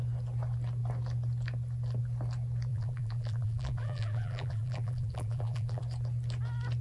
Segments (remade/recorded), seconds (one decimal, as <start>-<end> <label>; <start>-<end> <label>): 0.0-2.7 recorded; 2.7-5.8 remade; 5.8-6.8 recorded

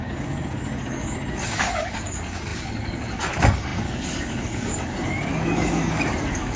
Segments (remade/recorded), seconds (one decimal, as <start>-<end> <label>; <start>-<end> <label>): 0.0-6.6 remade

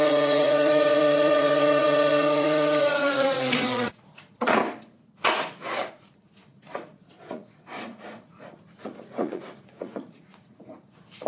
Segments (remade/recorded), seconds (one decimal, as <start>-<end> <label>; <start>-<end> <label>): 0.0-4.6 remade; 4.6-5.2 recorded; 5.2-11.3 remade

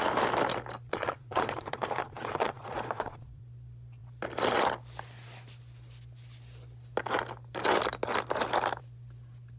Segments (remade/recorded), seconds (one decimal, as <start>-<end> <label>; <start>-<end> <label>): 0.0-0.9 recorded; 0.9-3.4 remade; 3.4-9.6 recorded